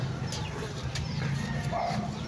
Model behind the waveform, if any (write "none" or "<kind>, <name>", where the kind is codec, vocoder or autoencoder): none